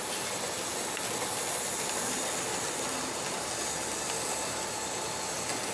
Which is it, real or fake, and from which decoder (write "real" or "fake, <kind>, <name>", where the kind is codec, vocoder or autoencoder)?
real